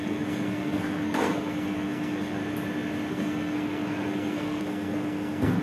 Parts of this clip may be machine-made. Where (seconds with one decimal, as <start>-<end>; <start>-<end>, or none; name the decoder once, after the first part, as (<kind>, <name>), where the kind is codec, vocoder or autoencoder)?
0.0-2.4 (codec, SNAC); 3.1-5.6